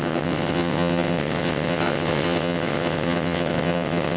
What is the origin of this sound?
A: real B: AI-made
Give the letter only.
B